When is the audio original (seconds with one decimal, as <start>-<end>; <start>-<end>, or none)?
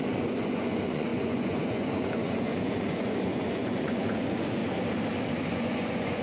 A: 4.6-5.5